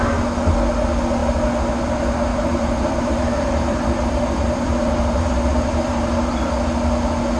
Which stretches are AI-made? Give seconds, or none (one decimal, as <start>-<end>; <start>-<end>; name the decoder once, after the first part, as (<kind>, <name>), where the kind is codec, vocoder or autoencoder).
2.3-6.5 (vocoder, BigVGAN v2)